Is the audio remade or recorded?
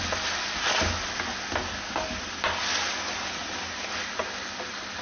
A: recorded